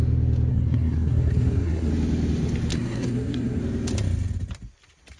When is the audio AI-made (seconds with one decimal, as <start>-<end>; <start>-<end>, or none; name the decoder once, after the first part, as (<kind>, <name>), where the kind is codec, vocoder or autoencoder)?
0.5-1.9 (codec, SNAC); 2.7-3.6